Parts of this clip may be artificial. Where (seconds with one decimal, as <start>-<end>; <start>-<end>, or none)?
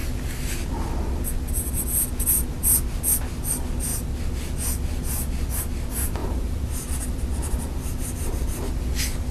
6.2-8.4